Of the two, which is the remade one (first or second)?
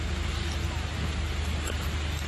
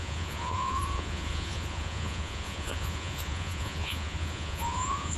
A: second